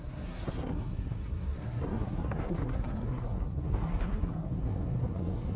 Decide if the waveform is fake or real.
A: fake